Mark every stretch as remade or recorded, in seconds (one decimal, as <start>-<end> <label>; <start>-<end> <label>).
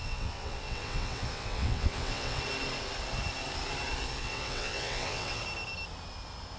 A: 0.0-2.4 remade; 2.4-4.2 recorded; 4.2-5.4 remade; 5.4-6.6 recorded